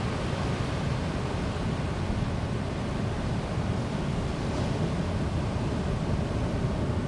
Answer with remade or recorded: recorded